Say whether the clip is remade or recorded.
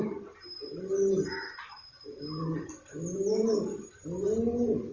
recorded